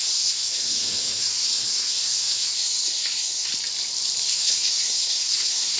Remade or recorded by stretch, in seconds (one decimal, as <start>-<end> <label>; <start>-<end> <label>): 0.0-3.5 remade; 3.5-4.3 recorded; 4.3-5.8 remade